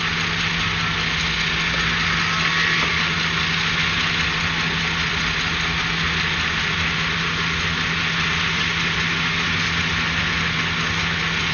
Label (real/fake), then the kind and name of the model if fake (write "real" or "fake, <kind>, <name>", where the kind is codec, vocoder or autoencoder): real